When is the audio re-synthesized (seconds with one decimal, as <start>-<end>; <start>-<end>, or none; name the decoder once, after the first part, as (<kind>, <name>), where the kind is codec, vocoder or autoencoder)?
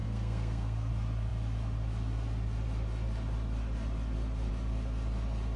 0.0-0.9 (codec, SNAC)